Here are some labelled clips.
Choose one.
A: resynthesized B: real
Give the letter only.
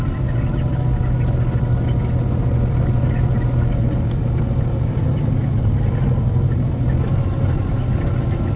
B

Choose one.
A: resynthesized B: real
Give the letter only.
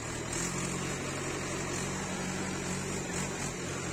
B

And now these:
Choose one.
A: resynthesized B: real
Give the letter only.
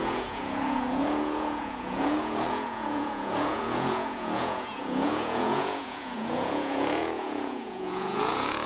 A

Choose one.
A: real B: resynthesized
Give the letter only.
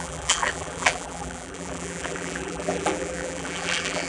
B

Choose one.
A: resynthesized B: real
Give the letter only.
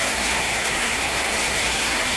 A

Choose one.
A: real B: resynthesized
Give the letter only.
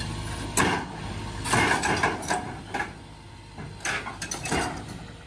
A